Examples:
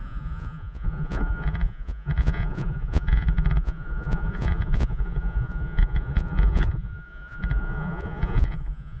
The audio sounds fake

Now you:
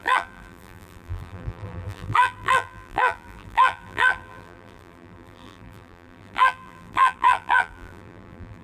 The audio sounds fake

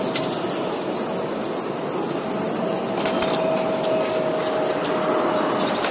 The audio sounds real